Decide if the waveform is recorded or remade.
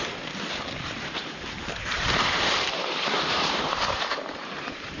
remade